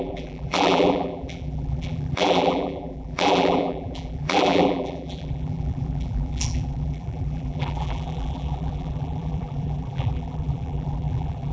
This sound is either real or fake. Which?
fake